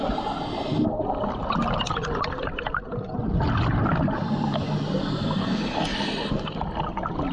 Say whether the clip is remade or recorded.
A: recorded